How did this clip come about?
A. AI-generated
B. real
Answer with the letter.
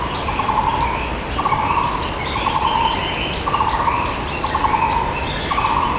B